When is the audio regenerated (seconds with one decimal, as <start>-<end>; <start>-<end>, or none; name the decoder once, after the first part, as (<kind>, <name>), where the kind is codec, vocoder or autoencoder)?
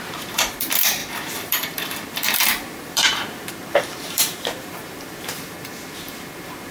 0.0-6.7 (vocoder, BigVGAN v2)